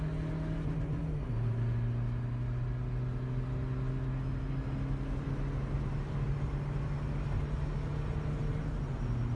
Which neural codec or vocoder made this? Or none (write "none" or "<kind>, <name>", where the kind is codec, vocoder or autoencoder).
none